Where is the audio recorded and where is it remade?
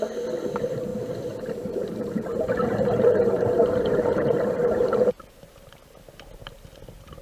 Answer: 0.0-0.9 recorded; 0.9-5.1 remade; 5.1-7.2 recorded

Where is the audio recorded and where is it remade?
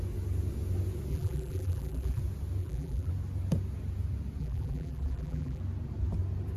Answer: 0.0-1.1 recorded; 1.1-2.2 remade; 2.2-2.6 recorded; 2.6-3.1 remade; 3.1-4.4 recorded; 4.4-5.6 remade; 5.6-6.6 recorded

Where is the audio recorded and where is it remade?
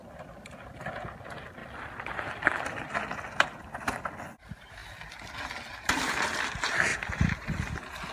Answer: 0.0-0.5 remade; 0.5-1.6 recorded; 1.6-3.0 remade; 3.0-6.9 recorded; 6.9-7.5 remade; 7.5-8.1 recorded